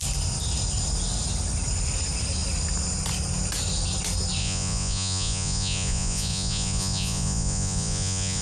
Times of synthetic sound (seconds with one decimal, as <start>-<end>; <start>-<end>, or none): 4.4-8.4